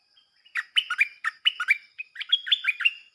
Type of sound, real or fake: fake